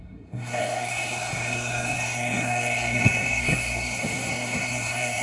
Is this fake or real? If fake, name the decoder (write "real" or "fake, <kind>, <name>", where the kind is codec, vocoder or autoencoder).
fake, codec, SNAC